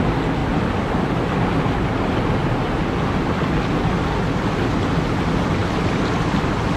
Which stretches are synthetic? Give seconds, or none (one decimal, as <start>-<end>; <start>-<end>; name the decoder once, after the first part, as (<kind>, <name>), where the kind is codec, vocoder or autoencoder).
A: 5.6-6.1 (vocoder, BigVGAN v2)